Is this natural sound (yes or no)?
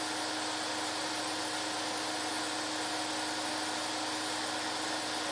yes